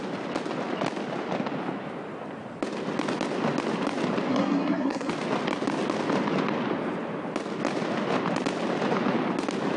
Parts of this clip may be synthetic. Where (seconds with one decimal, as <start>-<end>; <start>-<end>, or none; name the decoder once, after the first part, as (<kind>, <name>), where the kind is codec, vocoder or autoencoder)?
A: 4.3-5.1 (codec, SNAC)